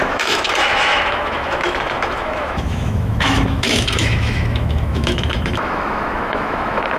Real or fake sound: fake